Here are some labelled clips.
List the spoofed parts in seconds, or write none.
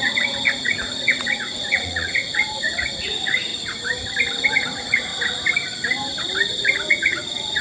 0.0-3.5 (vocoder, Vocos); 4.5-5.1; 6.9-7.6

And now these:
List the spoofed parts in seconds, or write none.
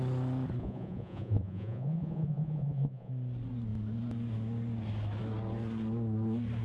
0.6-3.1 (vocoder, Vocos)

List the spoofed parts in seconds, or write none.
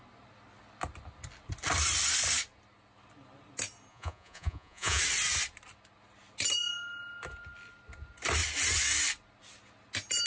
3.9-5.0 (vocoder, Vocos)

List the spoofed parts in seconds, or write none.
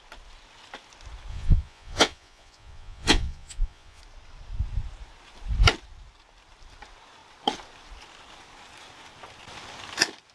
1.3-4.0 (vocoder, Vocos)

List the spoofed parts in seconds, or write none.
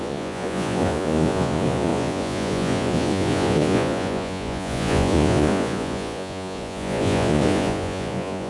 0.0-8.5 (vocoder, Vocos)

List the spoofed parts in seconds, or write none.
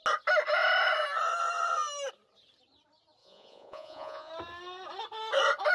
3.2-4.3 (vocoder, Vocos)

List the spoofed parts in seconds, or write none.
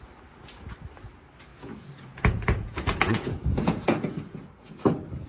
1.5-4.7 (vocoder, Vocos)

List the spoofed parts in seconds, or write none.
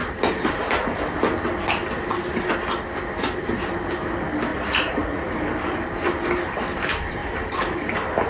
4.5-5.4 (vocoder, Vocos)